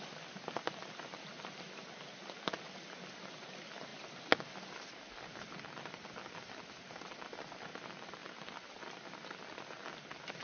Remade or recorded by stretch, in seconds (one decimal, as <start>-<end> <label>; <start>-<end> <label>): 0.0-10.4 recorded